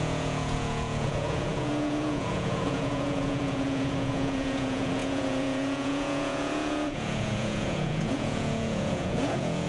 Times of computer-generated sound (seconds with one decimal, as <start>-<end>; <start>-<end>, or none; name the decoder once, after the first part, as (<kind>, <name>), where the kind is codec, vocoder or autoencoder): 0.0-9.7 (vocoder, Vocos)